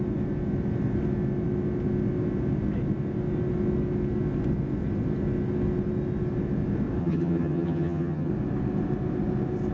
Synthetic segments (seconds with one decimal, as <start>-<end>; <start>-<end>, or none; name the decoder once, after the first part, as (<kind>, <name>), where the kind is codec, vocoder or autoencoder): 7.0-8.3 (vocoder, HiFi-GAN)